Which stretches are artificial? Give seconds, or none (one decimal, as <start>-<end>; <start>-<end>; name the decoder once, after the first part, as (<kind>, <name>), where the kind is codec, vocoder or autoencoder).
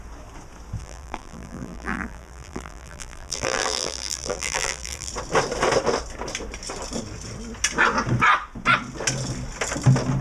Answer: 0.8-5.1 (vocoder, BigVGAN v2)